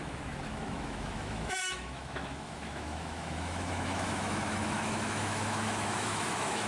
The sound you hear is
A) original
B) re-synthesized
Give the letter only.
B